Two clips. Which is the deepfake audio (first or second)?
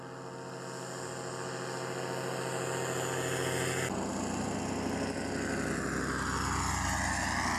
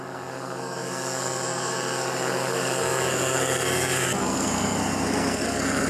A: second